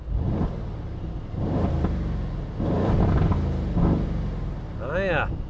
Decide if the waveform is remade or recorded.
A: recorded